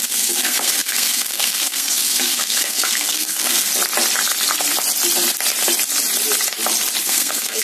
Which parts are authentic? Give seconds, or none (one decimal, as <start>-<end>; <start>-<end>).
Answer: 3.7-7.0